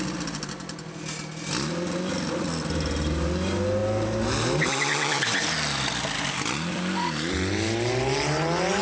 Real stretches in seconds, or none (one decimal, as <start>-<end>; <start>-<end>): 0.0-8.8